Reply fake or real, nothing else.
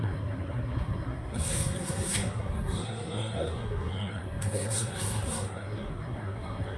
fake